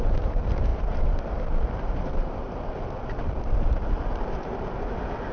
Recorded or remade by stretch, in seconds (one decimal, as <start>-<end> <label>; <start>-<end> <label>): 0.0-0.7 recorded; 0.7-3.9 remade; 3.9-5.3 recorded